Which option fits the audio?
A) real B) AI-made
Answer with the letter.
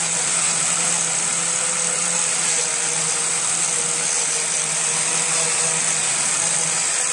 A